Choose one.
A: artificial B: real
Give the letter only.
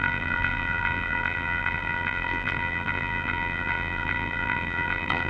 A